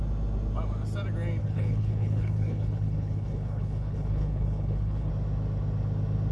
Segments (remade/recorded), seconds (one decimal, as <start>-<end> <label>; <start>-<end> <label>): 0.0-1.4 recorded; 1.4-5.1 remade; 5.1-6.3 recorded